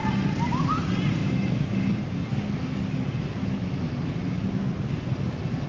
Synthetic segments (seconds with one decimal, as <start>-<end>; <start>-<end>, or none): 1.2-1.9; 3.4-3.9